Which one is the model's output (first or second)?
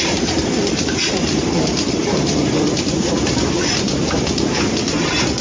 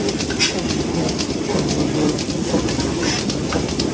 first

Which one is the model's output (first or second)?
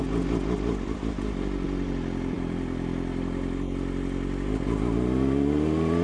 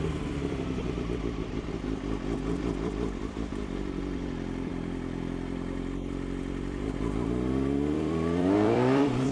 second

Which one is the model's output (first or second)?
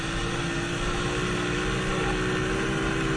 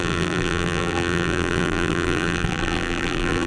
second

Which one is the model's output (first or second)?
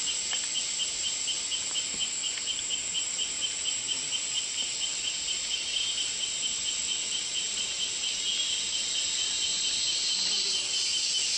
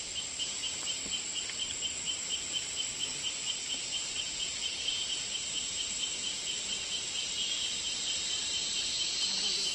second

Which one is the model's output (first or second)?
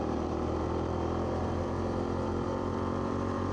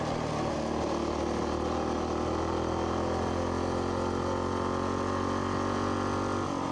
first